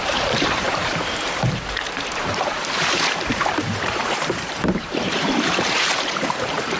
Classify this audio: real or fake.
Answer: fake